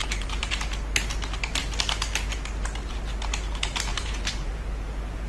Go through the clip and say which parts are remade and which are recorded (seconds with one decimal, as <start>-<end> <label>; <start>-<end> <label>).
0.0-0.5 remade; 0.5-3.9 recorded; 3.9-4.6 remade; 4.6-5.3 recorded